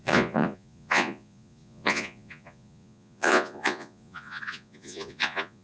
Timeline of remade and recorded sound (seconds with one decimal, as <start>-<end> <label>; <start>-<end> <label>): 0.0-5.6 remade